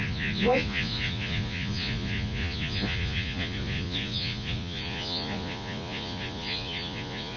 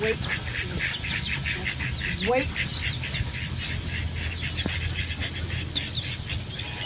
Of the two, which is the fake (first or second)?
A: first